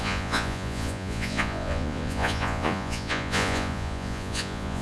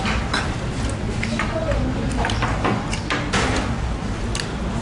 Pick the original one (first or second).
second